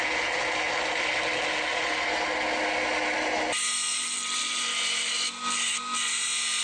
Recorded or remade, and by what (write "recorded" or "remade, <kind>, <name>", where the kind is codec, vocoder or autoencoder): recorded